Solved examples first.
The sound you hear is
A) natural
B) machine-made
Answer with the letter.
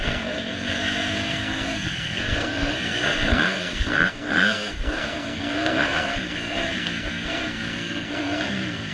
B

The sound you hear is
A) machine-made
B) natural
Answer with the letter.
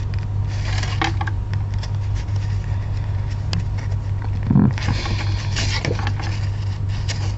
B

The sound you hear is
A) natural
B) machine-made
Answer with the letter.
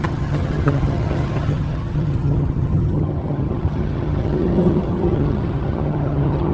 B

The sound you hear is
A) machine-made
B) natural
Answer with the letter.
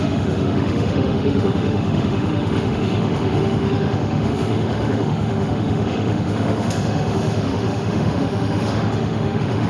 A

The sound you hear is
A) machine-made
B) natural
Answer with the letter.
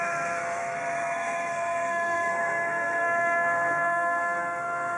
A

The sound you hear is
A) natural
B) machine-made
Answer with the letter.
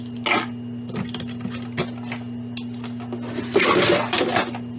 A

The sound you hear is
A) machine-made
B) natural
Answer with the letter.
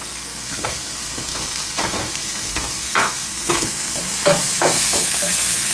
A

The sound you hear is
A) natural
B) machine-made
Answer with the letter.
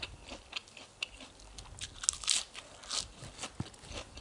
A